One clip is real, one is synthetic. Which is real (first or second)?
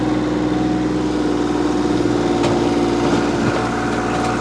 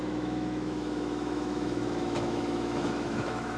first